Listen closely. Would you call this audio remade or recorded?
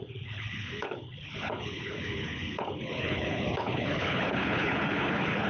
remade